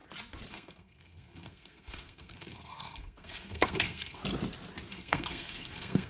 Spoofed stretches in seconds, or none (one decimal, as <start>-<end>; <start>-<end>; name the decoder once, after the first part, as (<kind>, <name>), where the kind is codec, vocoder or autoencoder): 0.5-4.2 (codec, SNAC); 4.9-6.1